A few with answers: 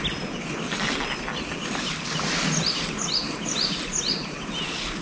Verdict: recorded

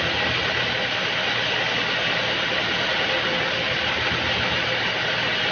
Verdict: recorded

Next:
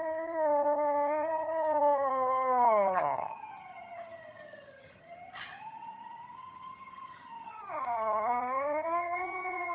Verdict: remade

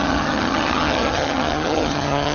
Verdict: remade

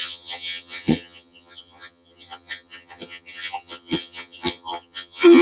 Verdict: remade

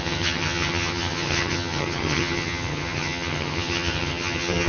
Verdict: remade